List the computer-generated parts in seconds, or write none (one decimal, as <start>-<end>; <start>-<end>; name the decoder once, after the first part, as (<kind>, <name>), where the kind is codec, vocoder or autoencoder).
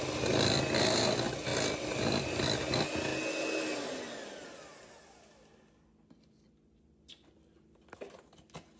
none